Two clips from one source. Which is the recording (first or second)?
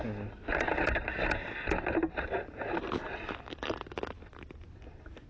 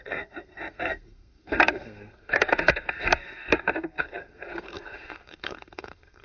first